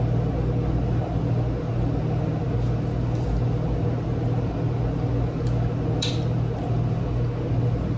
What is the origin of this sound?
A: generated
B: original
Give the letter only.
B